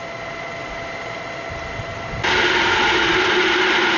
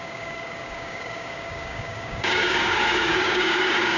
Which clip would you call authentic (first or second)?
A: first